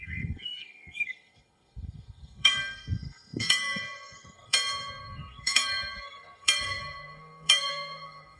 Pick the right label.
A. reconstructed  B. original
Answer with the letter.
A